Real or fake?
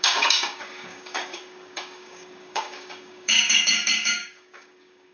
fake